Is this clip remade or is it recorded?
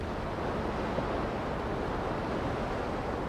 recorded